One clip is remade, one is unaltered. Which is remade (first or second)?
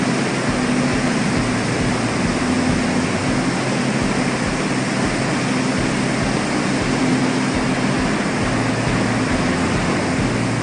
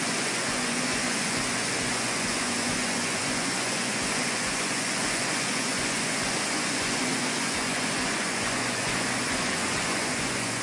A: second